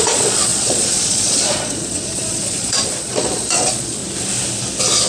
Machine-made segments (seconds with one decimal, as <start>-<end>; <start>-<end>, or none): 0.0-4.0